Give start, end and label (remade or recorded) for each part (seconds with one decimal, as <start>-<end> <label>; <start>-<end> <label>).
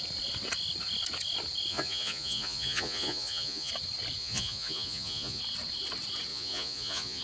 0.0-1.7 recorded; 1.7-3.7 remade; 3.7-4.2 recorded; 4.2-5.4 remade; 5.4-6.3 recorded; 6.3-7.2 remade